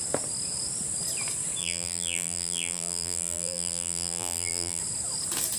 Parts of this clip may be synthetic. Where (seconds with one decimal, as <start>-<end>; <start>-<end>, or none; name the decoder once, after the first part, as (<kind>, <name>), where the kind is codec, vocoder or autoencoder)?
1.6-4.8 (vocoder, BigVGAN v2)